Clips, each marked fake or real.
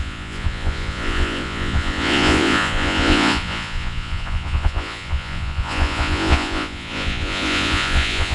fake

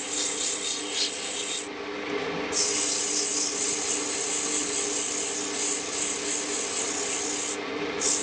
real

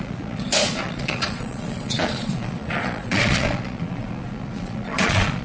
fake